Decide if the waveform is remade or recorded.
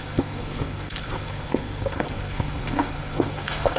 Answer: remade